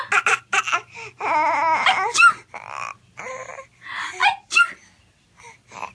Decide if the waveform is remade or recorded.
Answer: recorded